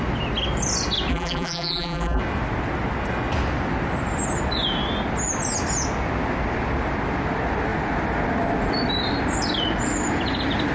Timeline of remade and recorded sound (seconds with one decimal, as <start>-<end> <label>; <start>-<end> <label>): 0.0-1.1 recorded; 1.1-2.2 remade; 2.2-10.7 recorded